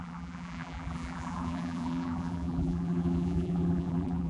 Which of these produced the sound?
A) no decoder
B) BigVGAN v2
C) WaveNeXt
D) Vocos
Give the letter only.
B